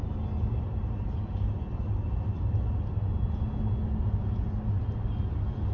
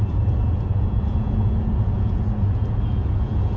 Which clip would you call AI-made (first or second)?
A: second